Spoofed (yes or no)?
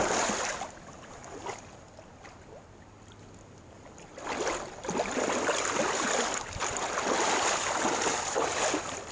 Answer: no